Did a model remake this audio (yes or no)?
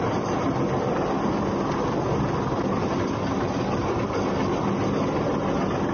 no